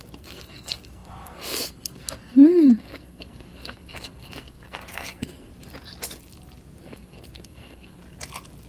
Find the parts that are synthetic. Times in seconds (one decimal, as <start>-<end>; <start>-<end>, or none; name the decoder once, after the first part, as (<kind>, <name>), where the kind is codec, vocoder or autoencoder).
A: 0.0-5.5 (codec, SNAC); 6.8-8.0